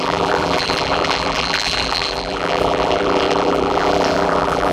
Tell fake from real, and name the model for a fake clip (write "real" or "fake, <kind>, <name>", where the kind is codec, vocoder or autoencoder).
fake, vocoder, BigVGAN v2